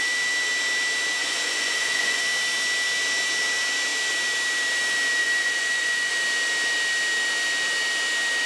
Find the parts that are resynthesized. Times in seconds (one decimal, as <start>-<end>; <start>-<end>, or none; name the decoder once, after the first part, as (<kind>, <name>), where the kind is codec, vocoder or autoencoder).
1.2-2.2 (vocoder, Vocos); 5.2-6.1